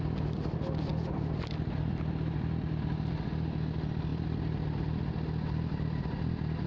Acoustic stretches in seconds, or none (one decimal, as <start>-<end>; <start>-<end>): 0.0-6.7